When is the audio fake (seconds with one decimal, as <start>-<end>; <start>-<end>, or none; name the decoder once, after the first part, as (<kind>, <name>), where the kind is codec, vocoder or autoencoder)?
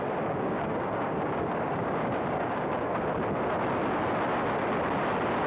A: 0.0-2.9 (codec, DAC)